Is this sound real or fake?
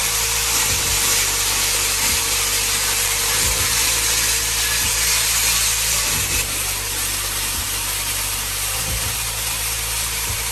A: fake